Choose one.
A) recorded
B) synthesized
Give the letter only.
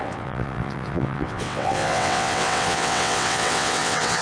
B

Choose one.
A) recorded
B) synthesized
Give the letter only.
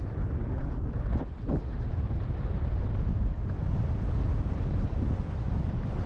A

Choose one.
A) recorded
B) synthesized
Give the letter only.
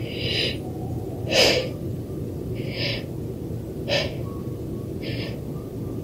B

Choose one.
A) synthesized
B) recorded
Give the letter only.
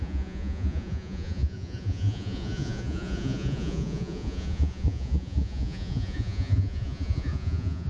A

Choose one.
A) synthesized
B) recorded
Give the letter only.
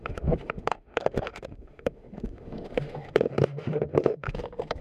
A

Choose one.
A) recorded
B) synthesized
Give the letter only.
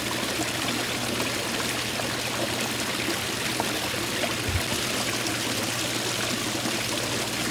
A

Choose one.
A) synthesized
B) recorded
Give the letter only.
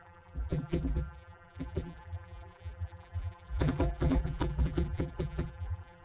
A